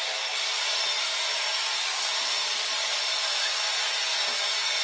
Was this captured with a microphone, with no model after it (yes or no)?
yes